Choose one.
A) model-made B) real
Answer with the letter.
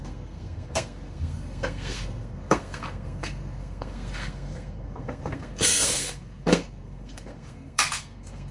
A